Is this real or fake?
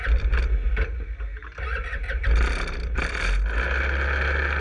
real